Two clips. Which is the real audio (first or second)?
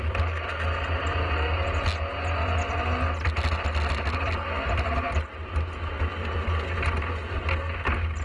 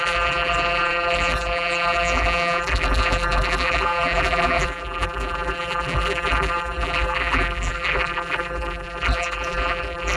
first